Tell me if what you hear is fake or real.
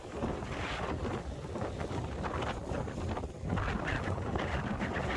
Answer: real